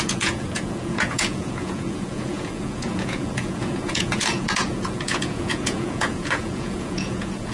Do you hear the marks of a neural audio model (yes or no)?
yes